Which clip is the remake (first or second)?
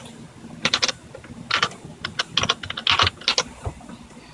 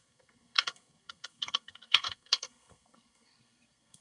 second